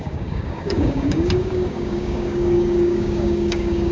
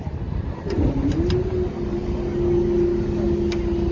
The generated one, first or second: first